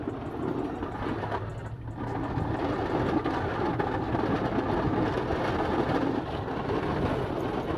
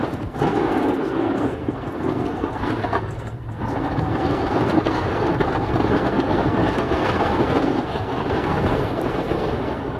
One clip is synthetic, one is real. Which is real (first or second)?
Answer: first